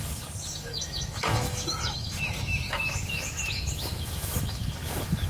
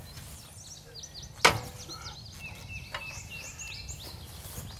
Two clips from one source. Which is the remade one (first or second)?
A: first